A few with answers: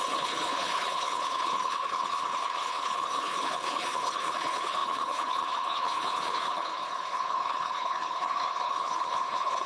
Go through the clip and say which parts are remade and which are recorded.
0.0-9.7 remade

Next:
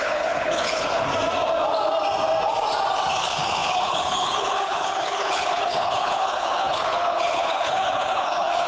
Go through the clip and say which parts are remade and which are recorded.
0.0-1.1 remade; 1.1-3.2 recorded; 3.2-8.7 remade

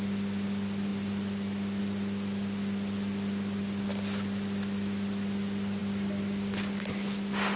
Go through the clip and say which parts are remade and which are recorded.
0.0-7.6 recorded

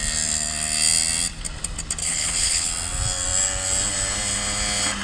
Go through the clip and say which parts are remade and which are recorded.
0.0-2.0 recorded; 2.0-2.7 remade; 2.7-5.0 recorded